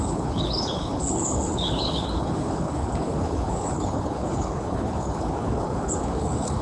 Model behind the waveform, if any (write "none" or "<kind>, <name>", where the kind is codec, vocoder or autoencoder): codec, HILCodec